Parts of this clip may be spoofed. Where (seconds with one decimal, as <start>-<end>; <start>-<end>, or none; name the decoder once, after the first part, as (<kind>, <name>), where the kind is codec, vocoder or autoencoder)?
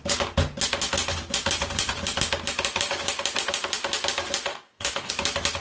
4.5-5.1 (codec, DAC)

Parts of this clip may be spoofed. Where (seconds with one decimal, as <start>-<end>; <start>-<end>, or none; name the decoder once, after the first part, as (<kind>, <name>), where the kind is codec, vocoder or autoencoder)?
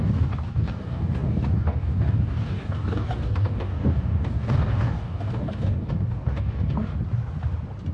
0.0-6.9 (codec, DAC)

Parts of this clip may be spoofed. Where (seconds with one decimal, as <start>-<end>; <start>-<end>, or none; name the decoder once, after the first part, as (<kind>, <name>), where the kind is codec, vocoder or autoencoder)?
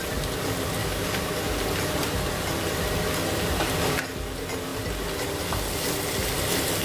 0.8-1.4 (codec, DAC)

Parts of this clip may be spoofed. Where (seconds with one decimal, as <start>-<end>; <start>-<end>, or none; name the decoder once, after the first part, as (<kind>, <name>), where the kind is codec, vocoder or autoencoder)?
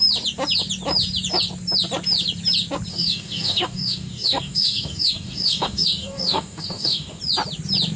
2.9-7.2 (codec, DAC)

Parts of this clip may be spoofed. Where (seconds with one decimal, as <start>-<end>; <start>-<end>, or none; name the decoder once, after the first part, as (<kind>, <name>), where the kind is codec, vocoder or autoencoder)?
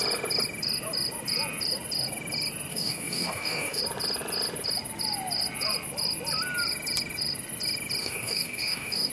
2.7-3.8 (codec, DAC); 8.0-9.1